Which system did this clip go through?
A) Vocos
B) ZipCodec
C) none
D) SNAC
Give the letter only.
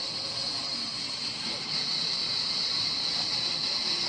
C